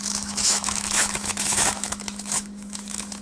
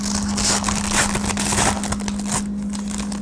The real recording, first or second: second